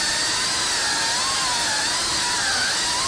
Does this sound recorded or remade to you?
recorded